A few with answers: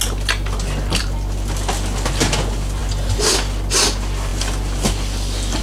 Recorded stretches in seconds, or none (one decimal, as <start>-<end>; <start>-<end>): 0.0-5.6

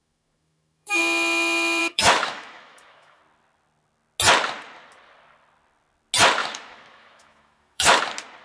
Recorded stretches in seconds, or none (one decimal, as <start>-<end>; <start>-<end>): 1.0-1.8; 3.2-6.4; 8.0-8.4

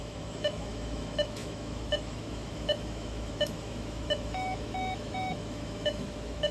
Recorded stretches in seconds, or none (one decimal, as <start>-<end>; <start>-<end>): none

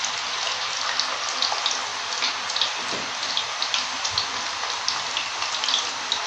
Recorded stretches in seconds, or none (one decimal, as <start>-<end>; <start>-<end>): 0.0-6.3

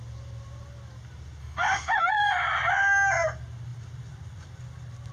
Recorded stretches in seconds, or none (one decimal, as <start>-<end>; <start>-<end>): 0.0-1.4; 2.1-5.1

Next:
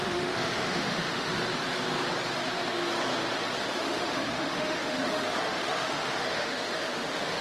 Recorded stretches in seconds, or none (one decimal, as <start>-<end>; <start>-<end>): 1.4-3.6

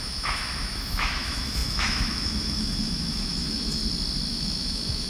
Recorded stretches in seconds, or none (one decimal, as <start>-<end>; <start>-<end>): 3.8-4.3